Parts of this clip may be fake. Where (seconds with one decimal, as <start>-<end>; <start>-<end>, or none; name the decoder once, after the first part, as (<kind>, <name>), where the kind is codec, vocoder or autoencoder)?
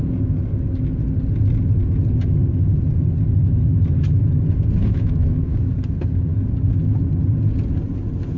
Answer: 4.8-5.7 (autoencoder, DAC-VAE)